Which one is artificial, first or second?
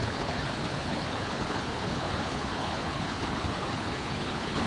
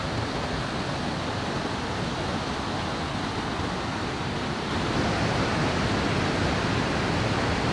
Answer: first